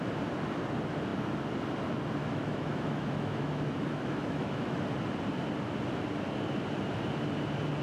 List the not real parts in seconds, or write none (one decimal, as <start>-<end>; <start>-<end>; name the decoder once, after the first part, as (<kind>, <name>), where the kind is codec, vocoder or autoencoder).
2.2-4.8 (autoencoder, DAC-VAE)